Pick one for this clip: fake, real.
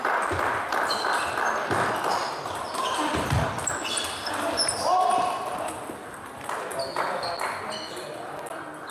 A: real